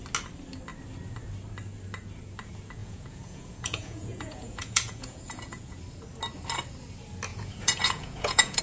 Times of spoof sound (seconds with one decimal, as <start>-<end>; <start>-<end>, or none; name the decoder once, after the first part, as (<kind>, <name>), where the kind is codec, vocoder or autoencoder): 2.8-5.8 (vocoder, Vocos); 7.3-8.6